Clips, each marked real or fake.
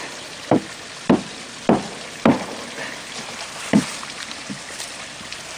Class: real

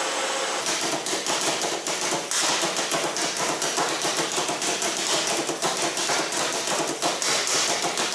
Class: real